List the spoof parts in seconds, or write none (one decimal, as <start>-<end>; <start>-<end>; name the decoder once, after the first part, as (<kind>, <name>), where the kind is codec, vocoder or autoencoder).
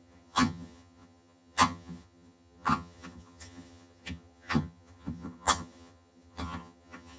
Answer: 0.0-7.2 (vocoder, HiFi-GAN)